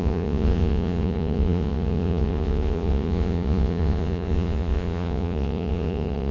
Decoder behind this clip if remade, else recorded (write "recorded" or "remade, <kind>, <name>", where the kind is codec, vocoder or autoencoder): remade, vocoder, Vocos